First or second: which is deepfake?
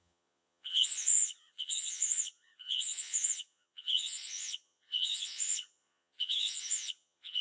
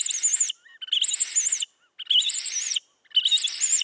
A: first